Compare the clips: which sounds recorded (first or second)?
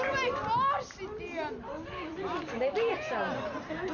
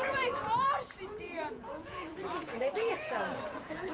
first